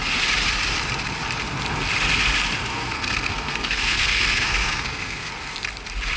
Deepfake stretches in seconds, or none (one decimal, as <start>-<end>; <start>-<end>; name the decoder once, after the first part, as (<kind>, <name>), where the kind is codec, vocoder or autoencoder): 2.7-5.3 (codec, SNAC)